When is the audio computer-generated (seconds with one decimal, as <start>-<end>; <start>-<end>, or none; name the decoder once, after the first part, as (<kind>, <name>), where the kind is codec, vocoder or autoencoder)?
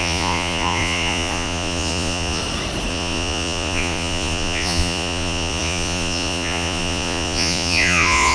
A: 0.0-2.4 (vocoder, Vocos); 2.9-8.3